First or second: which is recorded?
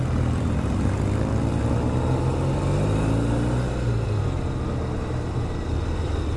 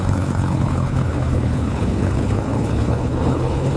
first